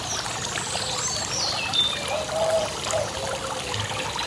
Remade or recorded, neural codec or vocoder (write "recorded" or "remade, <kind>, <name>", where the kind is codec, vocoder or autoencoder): recorded